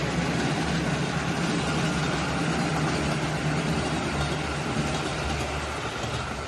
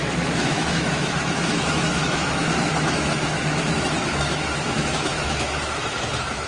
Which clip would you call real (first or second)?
first